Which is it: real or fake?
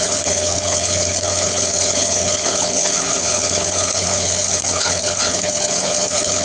fake